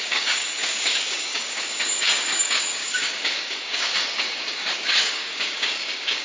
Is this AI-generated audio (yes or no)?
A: yes